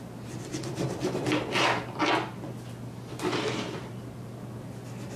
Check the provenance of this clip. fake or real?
real